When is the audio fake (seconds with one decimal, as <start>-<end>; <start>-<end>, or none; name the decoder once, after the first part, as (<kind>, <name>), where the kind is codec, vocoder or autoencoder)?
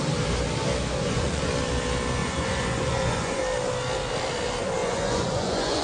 1.0-1.5 (vocoder, Vocos); 2.2-3.4; 4.8-5.8